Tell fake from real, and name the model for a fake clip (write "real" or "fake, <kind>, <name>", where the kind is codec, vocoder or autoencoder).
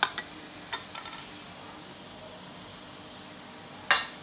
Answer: real